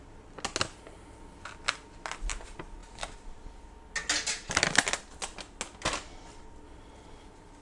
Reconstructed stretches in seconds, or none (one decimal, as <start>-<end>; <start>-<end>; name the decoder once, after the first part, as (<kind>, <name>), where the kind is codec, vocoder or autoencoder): none